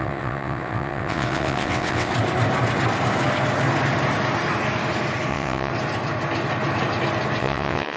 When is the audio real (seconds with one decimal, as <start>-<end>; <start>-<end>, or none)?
2.1-5.3; 5.7-7.4